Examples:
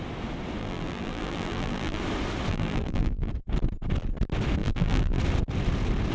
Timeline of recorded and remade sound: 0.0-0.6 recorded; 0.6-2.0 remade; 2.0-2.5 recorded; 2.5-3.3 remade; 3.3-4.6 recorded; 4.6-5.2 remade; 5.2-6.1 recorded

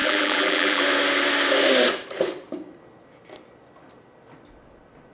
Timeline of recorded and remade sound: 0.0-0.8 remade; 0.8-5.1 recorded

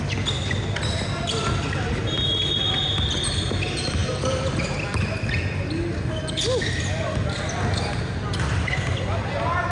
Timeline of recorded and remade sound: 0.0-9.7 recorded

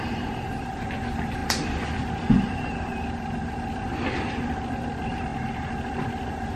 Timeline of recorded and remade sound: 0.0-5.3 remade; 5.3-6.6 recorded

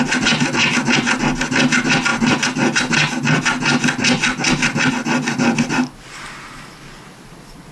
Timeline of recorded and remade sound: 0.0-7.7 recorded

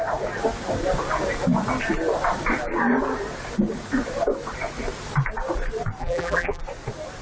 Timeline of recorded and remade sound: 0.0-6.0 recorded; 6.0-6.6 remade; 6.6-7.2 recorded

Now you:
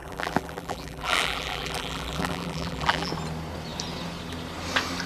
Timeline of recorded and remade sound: 0.0-3.1 remade; 3.1-5.1 recorded